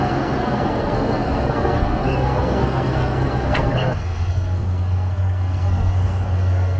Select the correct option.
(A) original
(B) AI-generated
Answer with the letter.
B